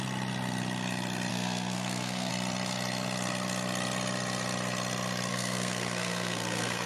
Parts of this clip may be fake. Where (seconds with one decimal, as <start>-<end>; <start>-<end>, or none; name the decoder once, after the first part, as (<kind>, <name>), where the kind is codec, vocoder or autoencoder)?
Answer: 1.3-2.3 (codec, SNAC); 5.3-6.9